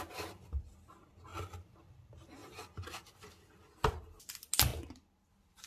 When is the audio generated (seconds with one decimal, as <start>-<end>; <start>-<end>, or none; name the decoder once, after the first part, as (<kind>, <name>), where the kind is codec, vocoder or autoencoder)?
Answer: none